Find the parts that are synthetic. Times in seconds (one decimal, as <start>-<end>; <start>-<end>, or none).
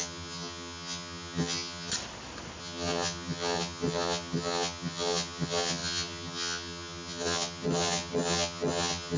0.0-1.9; 2.6-9.2